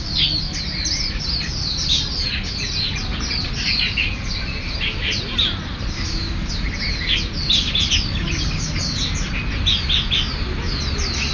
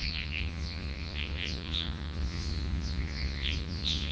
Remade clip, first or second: second